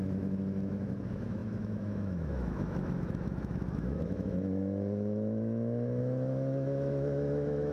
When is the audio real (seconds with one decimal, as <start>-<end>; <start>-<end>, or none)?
none